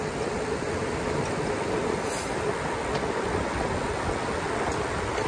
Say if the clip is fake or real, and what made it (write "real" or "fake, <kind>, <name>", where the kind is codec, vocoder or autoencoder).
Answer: real